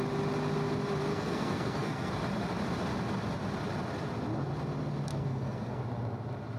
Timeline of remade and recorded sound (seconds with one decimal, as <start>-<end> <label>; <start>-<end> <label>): 0.0-1.1 recorded; 1.1-2.1 remade; 2.1-5.1 recorded; 5.1-5.8 remade; 5.8-6.6 recorded